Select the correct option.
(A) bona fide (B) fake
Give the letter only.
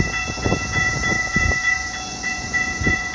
B